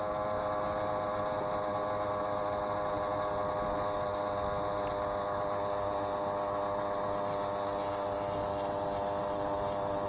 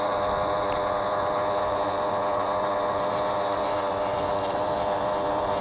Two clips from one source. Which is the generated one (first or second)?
second